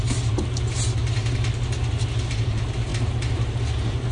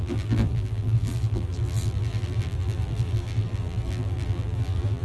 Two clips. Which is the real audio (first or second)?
first